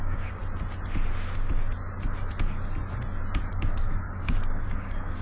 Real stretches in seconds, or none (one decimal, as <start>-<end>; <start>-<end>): 0.4-3.5